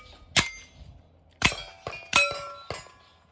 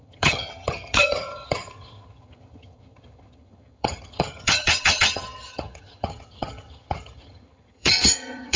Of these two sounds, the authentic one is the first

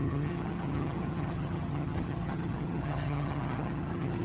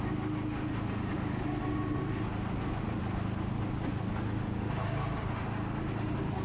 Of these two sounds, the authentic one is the second